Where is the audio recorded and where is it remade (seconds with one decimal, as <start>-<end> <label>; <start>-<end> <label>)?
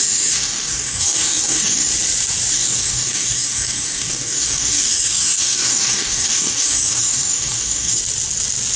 0.0-1.9 remade; 1.9-2.5 recorded; 2.5-8.0 remade; 8.0-8.8 recorded